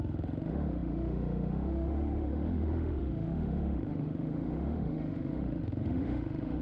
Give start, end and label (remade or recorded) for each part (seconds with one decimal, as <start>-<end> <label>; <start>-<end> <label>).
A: 0.0-6.6 remade